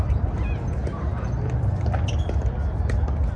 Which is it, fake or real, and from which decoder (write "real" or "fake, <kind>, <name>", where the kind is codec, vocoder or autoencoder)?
real